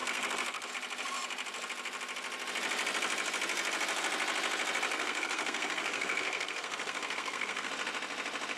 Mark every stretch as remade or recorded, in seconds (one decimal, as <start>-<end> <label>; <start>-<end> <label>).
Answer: 0.0-0.7 remade; 0.7-4.9 recorded; 4.9-7.7 remade; 7.7-8.6 recorded